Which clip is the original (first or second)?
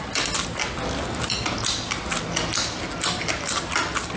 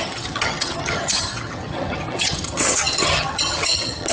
first